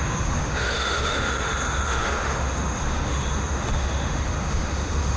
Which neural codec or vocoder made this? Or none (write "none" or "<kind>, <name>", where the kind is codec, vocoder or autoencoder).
autoencoder, DAC-VAE